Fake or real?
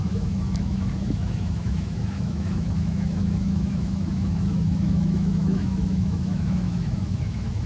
fake